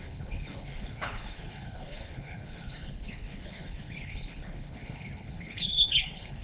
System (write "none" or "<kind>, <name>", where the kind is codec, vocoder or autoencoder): codec, HILCodec